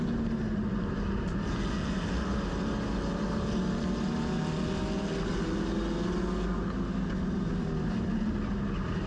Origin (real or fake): real